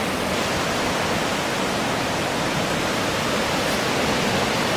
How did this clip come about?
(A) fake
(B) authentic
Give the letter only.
B